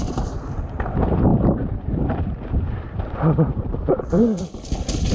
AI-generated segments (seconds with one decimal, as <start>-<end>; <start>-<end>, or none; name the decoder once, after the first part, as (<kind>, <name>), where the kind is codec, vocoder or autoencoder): 1.3-4.4 (vocoder, BigVGAN v2)